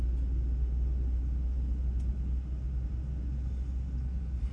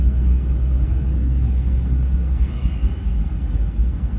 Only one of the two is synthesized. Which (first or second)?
second